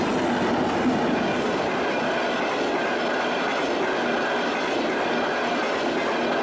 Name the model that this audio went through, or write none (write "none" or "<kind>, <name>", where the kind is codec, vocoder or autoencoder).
none